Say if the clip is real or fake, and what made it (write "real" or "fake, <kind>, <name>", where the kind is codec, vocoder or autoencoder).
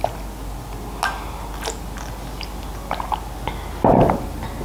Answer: real